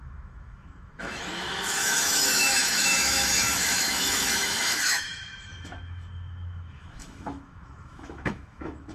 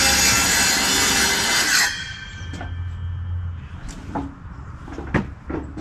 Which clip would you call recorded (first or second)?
second